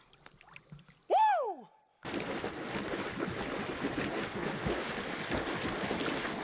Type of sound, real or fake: real